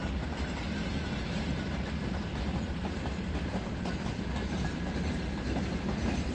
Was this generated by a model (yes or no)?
no